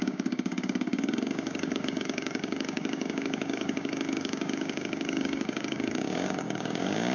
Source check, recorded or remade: remade